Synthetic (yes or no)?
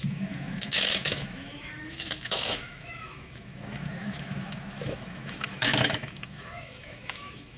yes